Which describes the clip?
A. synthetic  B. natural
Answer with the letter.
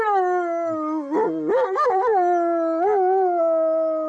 B